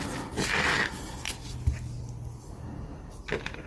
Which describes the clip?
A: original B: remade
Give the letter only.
A